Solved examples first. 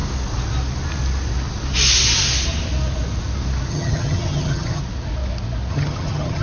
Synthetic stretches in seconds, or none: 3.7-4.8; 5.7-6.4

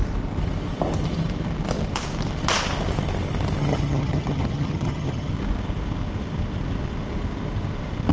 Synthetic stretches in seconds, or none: 3.6-5.3

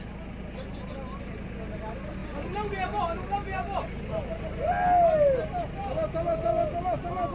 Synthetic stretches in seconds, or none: none